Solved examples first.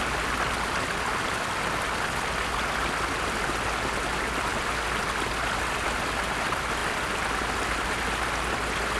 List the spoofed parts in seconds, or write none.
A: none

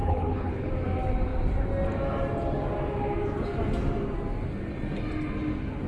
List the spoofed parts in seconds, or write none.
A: 0.0-0.7

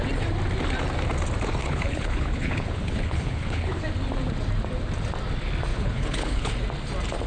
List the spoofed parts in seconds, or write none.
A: 1.6-3.8; 5.7-6.5

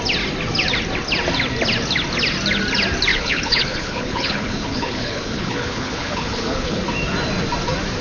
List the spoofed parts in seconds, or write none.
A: 3.1-6.8

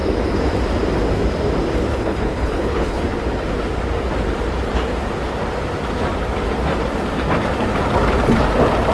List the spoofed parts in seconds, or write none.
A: 1.9-3.0

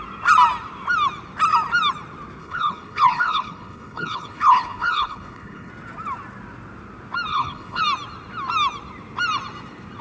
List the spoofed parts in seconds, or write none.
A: 2.4-5.7; 7.3-7.8

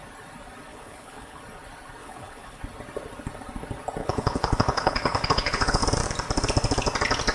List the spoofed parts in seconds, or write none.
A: 0.7-1.4; 2.0-2.6; 4.0-5.8